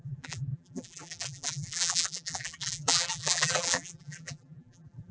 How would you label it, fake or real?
fake